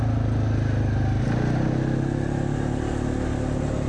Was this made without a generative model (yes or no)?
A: yes